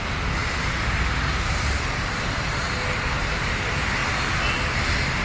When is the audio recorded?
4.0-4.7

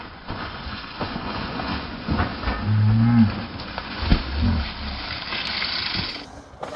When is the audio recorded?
2.3-3.6; 4.1-6.8

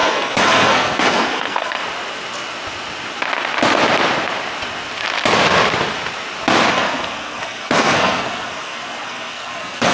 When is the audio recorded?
1.8-6.7

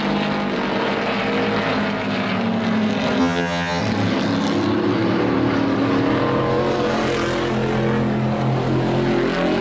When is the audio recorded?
0.0-3.2; 3.8-9.6

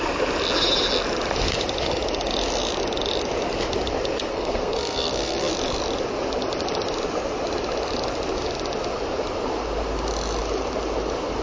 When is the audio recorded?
0.0-4.3; 5.5-11.4

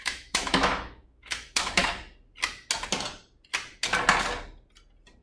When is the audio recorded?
1.8-5.2

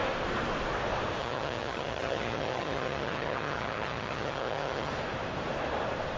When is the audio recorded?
0.0-1.2; 4.9-6.2